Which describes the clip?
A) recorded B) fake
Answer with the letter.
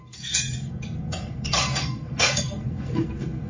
B